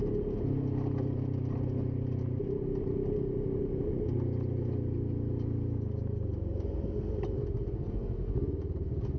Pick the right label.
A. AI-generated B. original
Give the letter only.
B